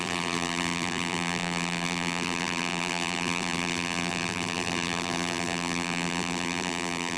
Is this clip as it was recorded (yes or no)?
no